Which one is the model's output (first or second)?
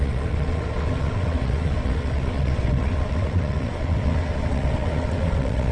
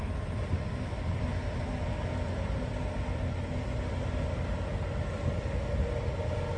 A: first